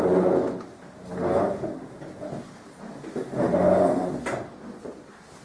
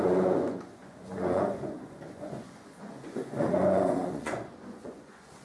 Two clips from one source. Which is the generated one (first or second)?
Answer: second